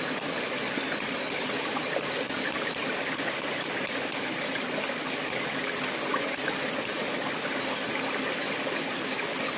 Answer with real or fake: real